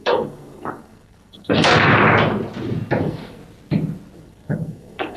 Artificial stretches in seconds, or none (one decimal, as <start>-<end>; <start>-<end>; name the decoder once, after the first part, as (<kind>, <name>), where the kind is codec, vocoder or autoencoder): 0.0-1.9 (codec, SNAC); 3.0-3.4; 4.2-5.2